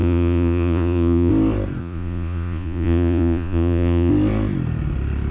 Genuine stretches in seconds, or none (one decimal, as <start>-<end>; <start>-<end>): 1.3-1.8; 4.1-5.3